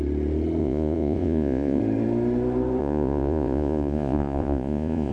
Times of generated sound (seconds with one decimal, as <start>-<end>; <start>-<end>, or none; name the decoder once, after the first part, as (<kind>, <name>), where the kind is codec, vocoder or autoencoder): 0.6-1.8 (vocoder, Vocos); 2.8-5.1